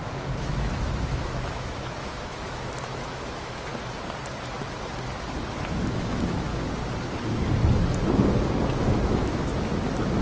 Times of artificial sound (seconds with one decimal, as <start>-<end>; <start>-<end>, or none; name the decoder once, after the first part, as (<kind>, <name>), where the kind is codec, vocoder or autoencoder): 0.0-3.7 (autoencoder, DAC-VAE); 5.5-6.5; 8.8-9.5